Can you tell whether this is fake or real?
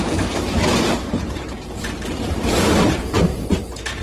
fake